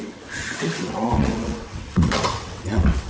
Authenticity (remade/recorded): remade